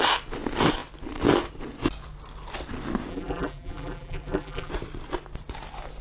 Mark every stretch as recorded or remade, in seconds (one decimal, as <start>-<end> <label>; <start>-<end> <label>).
0.0-3.1 recorded; 3.1-4.7 remade; 4.7-6.0 recorded